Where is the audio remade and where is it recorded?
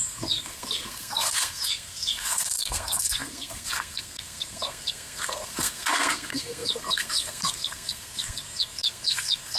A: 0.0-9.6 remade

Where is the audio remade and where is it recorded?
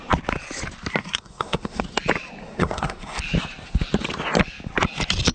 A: 0.0-1.0 recorded; 1.0-1.8 remade; 1.8-2.4 recorded; 2.4-3.2 remade; 3.2-5.3 recorded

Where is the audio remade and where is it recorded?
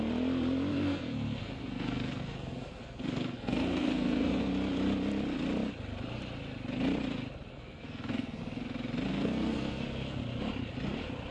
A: 0.0-0.7 recorded; 0.7-4.5 remade; 4.5-7.5 recorded; 7.5-8.4 remade; 8.4-9.1 recorded; 9.1-10.2 remade; 10.2-11.3 recorded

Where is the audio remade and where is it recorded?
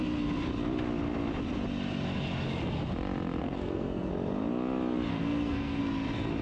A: 0.0-3.4 recorded; 3.4-4.1 remade; 4.1-5.1 recorded; 5.1-5.8 remade; 5.8-6.4 recorded